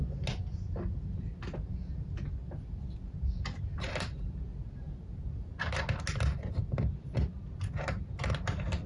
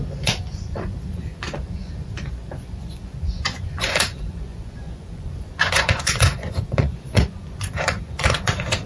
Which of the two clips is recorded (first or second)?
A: first